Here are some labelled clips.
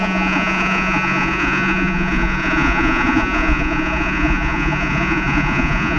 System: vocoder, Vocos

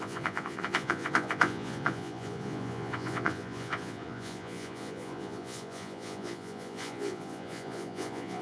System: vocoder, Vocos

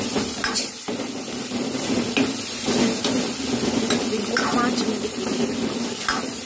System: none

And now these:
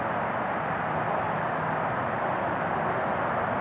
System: none